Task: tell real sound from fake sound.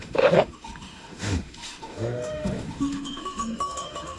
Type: fake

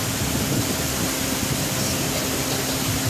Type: real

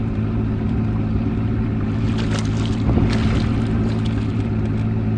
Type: real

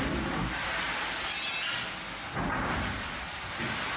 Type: real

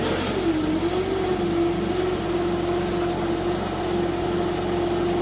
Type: real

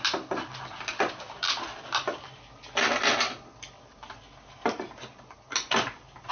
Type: real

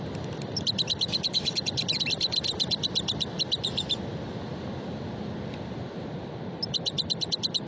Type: real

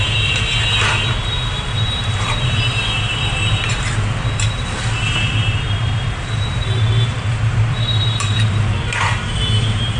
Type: fake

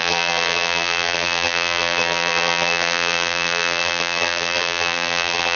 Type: fake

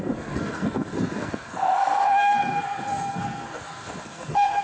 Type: fake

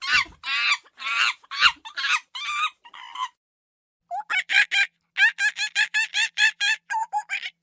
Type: real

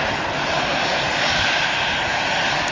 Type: real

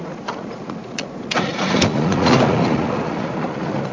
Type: fake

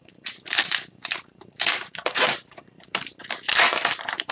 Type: fake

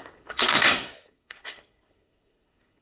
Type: fake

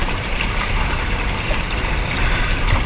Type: fake